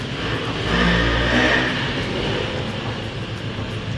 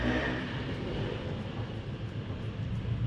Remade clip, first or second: second